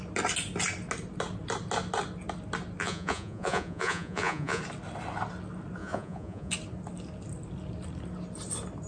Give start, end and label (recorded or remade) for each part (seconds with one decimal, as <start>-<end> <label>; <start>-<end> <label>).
0.0-2.8 recorded; 2.8-4.6 remade; 4.6-5.8 recorded; 5.8-6.5 remade; 6.5-8.9 recorded